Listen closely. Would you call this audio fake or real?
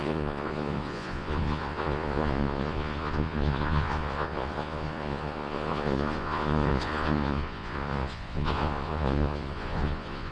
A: fake